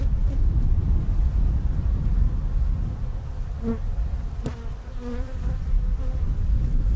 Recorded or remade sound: recorded